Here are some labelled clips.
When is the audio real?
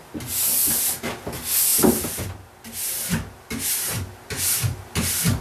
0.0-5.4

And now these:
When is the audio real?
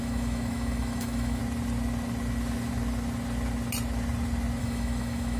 1.4-4.6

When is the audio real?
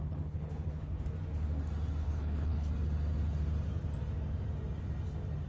1.0-2.0; 2.7-5.5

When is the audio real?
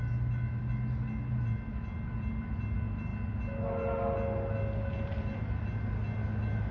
0.0-6.7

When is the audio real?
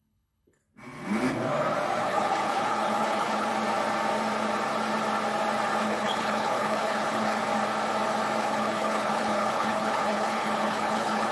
0.6-2.0; 3.5-5.8; 7.4-8.4